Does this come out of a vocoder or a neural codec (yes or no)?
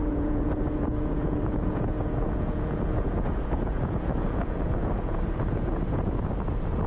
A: yes